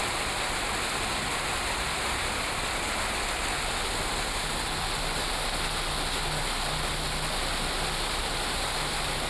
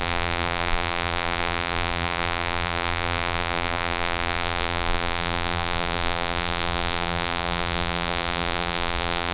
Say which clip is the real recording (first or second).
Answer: first